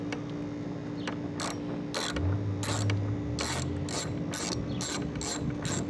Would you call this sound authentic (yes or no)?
yes